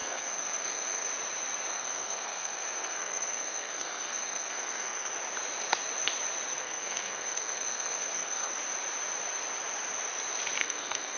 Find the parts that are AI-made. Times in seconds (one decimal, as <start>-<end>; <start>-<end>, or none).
0.0-1.1; 1.7-5.1; 6.6-8.5; 10.6-11.2